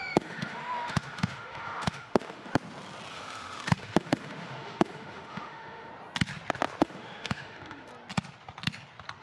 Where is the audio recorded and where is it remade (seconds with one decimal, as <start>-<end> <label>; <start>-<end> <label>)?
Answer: 0.0-2.5 remade; 2.5-3.1 recorded; 3.1-5.9 remade; 5.9-6.8 recorded; 6.8-7.9 remade; 7.9-9.2 recorded